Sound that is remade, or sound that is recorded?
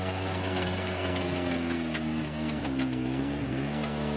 remade